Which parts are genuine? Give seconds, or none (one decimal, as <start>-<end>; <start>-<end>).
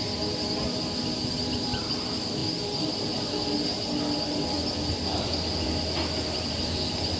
0.0-2.4; 3.0-7.2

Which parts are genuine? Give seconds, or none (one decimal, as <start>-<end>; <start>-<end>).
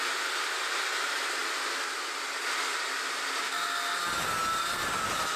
0.0-5.4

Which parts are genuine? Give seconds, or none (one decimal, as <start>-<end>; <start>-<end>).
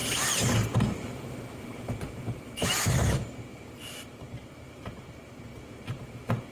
none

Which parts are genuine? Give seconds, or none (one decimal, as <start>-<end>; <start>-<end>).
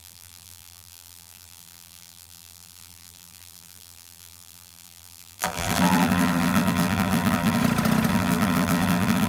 7.6-8.1